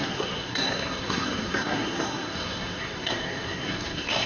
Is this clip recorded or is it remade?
remade